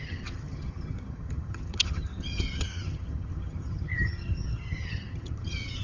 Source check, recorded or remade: remade